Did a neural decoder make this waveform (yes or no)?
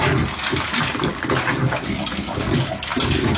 no